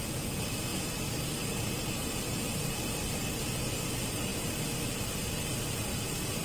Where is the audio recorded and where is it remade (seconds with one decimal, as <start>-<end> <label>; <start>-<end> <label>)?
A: 0.0-0.7 recorded; 0.7-2.9 remade; 2.9-6.4 recorded